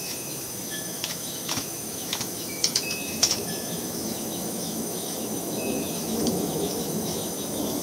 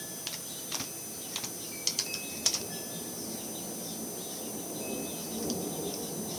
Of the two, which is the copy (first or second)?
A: first